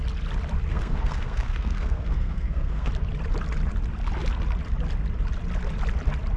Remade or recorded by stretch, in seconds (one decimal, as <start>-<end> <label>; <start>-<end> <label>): 0.0-0.7 recorded; 0.7-2.9 remade; 2.9-6.4 recorded